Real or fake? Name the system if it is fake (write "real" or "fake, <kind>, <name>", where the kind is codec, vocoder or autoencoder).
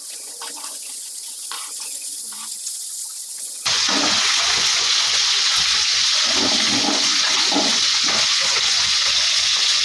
fake, vocoder, Vocos